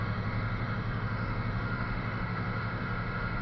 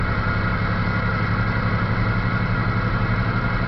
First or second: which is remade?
first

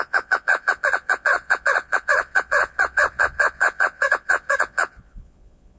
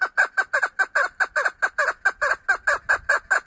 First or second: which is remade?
first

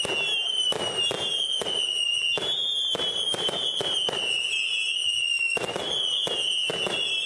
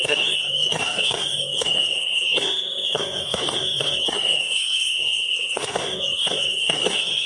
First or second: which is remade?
second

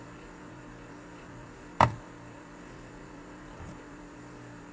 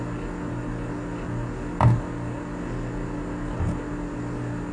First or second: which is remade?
first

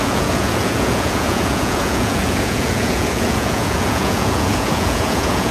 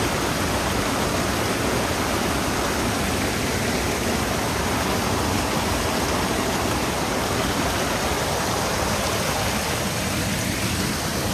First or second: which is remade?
first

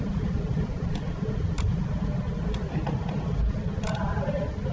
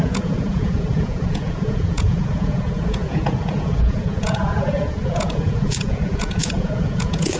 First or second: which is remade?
second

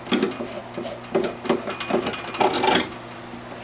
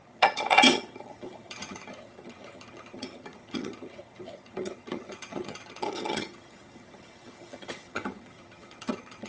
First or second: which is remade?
second